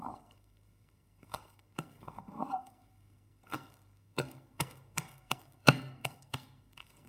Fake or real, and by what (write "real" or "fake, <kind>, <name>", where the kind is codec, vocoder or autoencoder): fake, codec, SNAC